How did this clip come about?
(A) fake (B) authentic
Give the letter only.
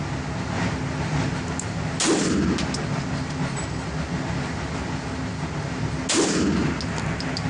B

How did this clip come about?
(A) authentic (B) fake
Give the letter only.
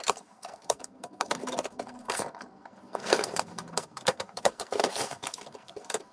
B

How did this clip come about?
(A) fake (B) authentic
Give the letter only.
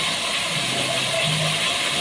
B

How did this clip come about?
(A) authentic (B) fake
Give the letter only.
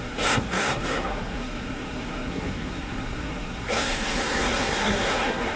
B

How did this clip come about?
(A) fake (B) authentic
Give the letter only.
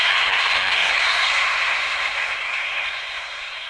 A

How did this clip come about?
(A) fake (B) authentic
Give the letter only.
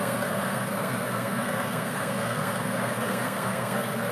A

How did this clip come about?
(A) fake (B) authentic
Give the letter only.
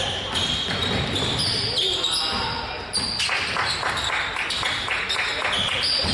B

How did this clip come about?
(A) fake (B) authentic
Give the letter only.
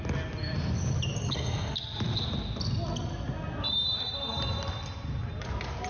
B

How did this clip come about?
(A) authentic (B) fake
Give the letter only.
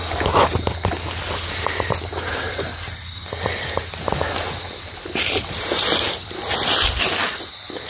A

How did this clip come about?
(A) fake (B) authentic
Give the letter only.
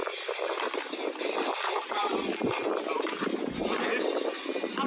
B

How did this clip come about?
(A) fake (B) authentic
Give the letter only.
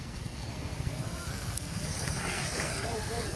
A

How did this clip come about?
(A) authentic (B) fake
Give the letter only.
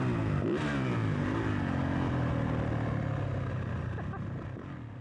A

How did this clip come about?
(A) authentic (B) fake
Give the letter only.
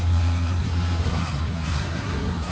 B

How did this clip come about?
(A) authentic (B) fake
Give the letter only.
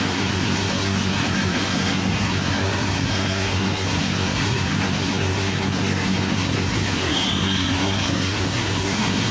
B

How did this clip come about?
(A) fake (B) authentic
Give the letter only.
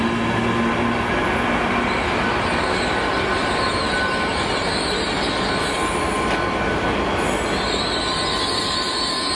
B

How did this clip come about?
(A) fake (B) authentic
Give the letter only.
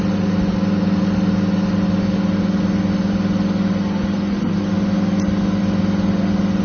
B